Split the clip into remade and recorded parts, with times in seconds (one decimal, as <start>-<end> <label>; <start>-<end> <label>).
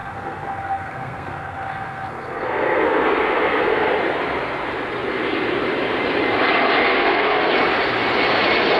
0.0-3.9 remade; 3.9-6.8 recorded; 6.8-7.5 remade; 7.5-8.8 recorded